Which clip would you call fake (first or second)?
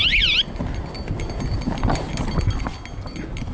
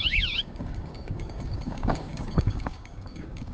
second